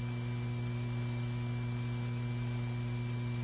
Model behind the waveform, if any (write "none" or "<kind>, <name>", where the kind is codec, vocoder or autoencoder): none